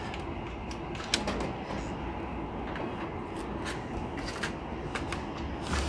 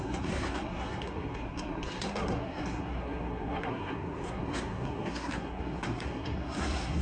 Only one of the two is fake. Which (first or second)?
second